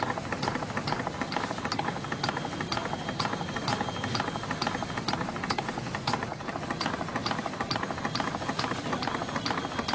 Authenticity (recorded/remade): recorded